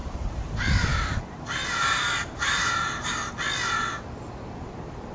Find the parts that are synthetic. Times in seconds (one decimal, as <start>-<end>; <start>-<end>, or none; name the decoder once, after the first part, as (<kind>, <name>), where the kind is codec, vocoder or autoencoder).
0.0-3.1 (vocoder, BigVGAN v2)